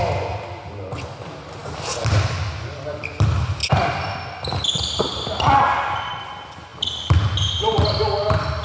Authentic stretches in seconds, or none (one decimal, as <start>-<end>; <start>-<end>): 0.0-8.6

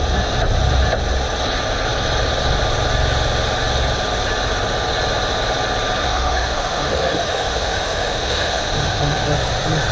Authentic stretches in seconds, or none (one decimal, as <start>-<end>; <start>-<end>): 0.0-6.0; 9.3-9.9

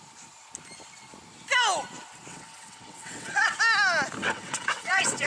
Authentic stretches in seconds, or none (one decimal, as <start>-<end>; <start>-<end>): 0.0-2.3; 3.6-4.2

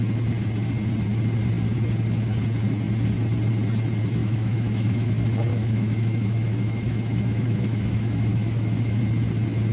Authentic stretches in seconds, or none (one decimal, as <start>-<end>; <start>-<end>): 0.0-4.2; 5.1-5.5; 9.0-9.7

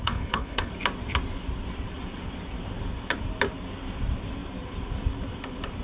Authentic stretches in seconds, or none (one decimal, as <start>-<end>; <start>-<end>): 0.7-5.8

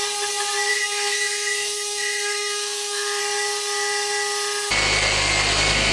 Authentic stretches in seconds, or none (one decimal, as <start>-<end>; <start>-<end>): 0.0-0.7; 3.2-5.9